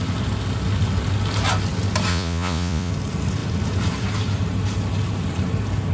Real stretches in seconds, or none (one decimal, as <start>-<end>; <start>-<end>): 0.0-2.1; 2.9-5.9